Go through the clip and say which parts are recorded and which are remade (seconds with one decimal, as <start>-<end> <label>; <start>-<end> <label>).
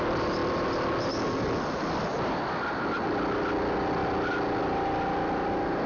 0.0-5.9 recorded